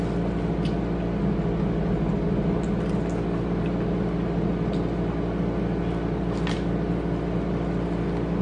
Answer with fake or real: real